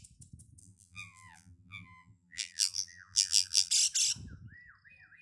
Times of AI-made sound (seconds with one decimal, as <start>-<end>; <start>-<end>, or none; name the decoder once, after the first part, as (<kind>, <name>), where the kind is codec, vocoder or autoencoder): 0.6-3.7 (vocoder, BigVGAN v2)